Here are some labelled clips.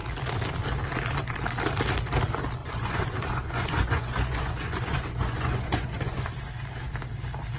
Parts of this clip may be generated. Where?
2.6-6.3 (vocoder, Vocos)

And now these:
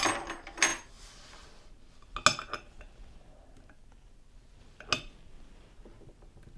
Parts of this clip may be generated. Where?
none

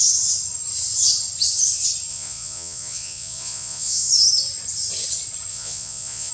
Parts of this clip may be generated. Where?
2.1-4.1 (vocoder, Vocos); 5.5-6.3

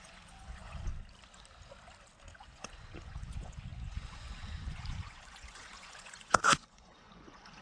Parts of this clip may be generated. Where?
0.0-0.9 (vocoder, Vocos); 2.4-7.6

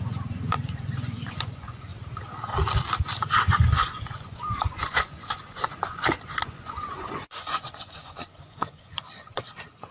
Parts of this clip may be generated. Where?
0.0-1.9 (vocoder, Vocos); 3.2-9.9